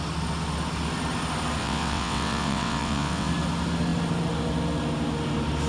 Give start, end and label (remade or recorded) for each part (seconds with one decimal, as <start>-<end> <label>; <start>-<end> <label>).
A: 0.0-1.6 recorded; 1.6-3.3 remade; 3.3-5.7 recorded